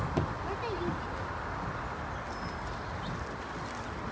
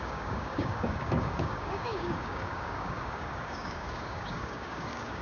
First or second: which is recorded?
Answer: first